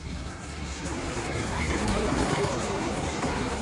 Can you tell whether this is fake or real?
fake